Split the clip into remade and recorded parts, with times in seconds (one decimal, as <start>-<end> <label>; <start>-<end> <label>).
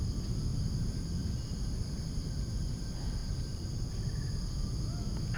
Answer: 0.0-0.5 recorded; 0.5-1.3 remade; 1.3-3.2 recorded; 3.2-3.9 remade; 3.9-5.4 recorded